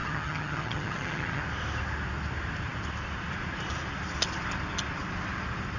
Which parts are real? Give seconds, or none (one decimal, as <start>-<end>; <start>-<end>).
1.4-5.8